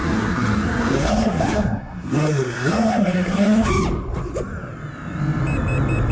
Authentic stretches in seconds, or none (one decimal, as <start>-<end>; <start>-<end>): 3.7-6.1